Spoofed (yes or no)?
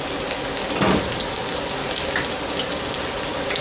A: no